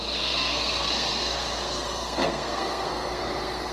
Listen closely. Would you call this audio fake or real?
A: fake